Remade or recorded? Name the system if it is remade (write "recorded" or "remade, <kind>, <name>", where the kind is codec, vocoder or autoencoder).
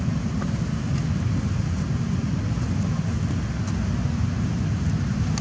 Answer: recorded